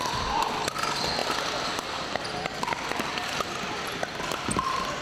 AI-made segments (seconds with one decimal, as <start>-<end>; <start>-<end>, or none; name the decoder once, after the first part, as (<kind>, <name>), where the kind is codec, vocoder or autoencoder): none